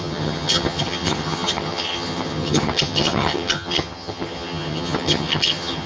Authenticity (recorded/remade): remade